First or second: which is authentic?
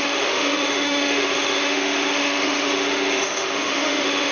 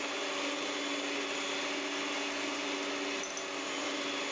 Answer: second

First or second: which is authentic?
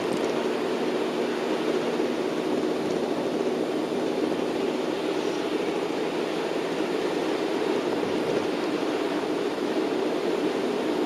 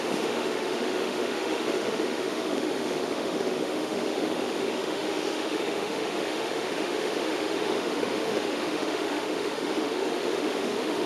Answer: first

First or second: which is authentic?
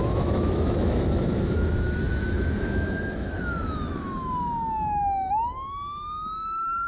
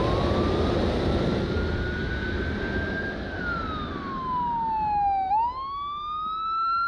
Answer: second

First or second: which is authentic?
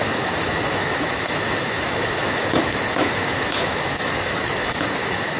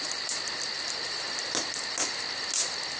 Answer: second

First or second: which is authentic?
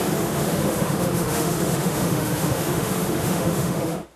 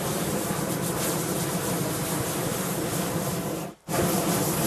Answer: second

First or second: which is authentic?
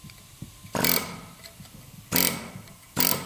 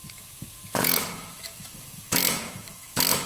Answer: first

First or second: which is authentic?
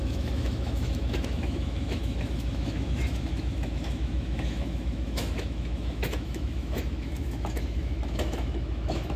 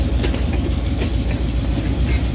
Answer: second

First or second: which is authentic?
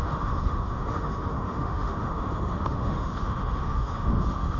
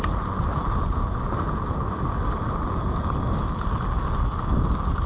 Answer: second